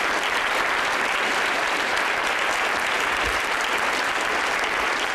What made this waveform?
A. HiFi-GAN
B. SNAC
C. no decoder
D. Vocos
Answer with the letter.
C